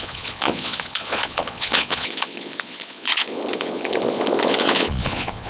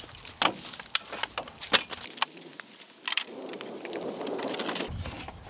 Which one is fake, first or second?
first